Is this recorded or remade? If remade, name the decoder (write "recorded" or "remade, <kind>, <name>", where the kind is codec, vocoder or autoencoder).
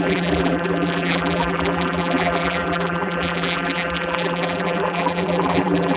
remade, vocoder, BigVGAN v2